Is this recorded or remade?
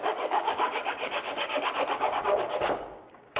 remade